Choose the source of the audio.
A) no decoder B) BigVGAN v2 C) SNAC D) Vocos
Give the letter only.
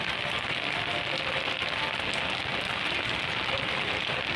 A